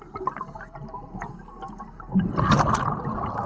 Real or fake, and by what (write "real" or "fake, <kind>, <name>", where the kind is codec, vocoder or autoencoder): real